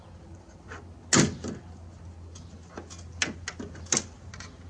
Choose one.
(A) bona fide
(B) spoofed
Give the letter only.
A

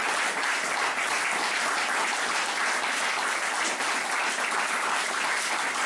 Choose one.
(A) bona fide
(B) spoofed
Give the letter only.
A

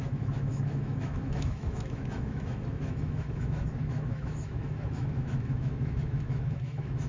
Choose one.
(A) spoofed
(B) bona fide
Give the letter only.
A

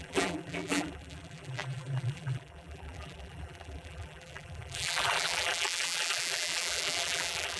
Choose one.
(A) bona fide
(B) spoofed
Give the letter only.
B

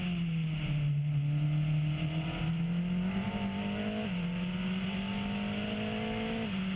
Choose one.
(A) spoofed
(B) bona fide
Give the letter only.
B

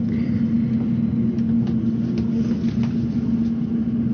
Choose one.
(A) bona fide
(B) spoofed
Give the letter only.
A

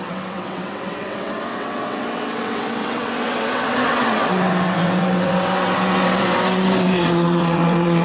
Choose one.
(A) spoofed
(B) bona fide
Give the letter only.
A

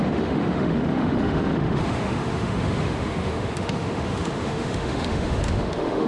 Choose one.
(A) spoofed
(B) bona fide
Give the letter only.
A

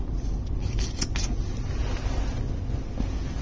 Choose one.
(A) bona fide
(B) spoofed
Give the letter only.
A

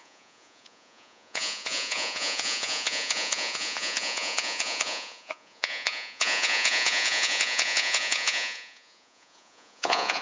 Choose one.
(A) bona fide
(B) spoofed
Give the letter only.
B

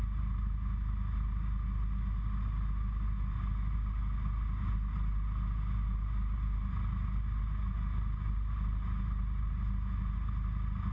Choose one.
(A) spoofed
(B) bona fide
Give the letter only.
B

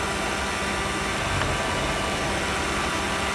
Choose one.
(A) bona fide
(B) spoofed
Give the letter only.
A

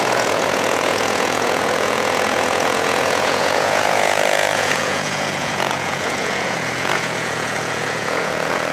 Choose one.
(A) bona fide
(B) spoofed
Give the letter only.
B